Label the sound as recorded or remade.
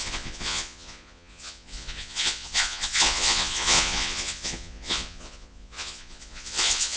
remade